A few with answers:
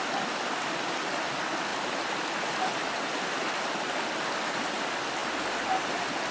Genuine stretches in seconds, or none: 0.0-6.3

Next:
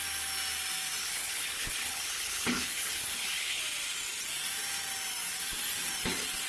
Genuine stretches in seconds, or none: 0.0-1.0; 3.6-6.5

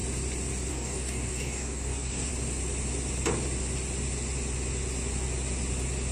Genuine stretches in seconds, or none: 0.0-0.7; 2.3-6.1

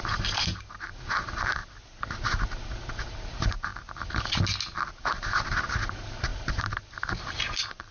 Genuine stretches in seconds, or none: 1.6-2.9; 3.7-4.9